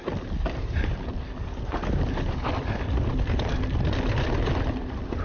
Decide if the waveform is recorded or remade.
recorded